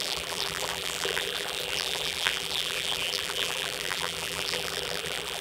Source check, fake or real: fake